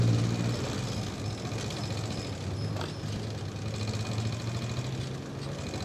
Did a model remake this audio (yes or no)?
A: no